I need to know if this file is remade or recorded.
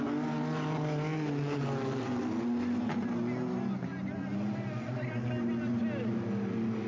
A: recorded